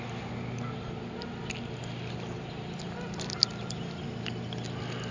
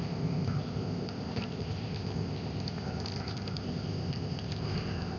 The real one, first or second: first